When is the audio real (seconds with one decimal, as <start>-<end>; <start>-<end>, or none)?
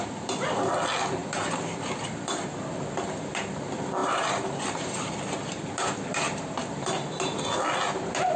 0.0-4.0; 5.1-8.4